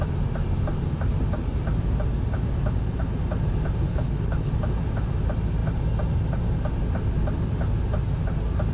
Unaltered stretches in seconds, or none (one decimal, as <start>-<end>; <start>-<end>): 0.0-3.9; 4.5-8.7